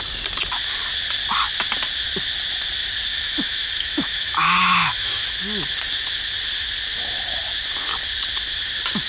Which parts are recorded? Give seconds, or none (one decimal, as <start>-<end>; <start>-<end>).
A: 0.0-3.1; 5.3-9.1